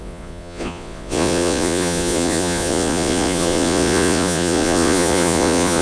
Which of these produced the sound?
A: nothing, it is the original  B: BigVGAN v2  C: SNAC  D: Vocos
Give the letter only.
D